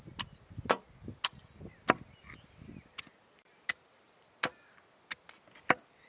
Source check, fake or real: real